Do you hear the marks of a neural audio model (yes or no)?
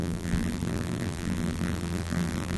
yes